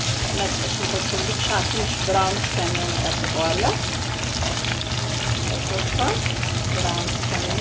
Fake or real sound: real